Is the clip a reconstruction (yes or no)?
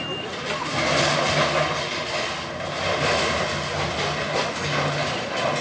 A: no